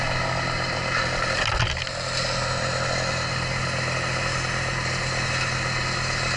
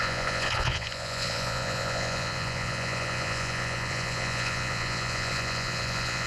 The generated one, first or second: second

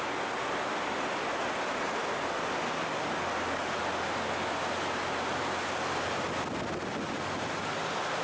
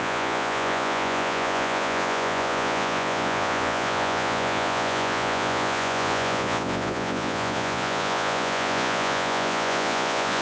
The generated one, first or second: second